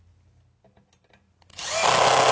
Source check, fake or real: real